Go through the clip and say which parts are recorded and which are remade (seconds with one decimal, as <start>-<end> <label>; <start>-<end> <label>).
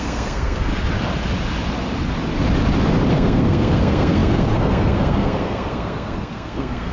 0.0-0.7 remade; 0.7-3.1 recorded; 3.1-6.9 remade